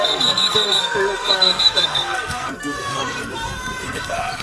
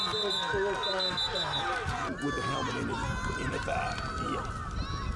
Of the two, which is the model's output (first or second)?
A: first